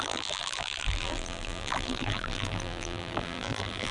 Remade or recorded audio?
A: remade